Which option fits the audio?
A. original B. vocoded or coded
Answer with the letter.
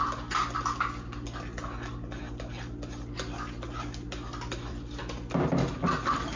A